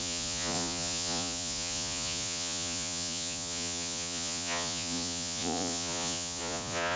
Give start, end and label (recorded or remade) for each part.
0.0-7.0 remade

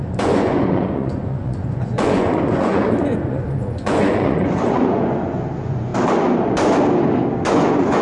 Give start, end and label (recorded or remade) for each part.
0.0-5.9 remade; 5.9-7.5 recorded; 7.5-8.0 remade

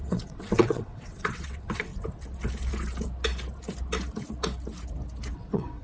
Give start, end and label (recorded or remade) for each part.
0.0-1.9 remade; 1.9-5.3 recorded; 5.3-5.8 remade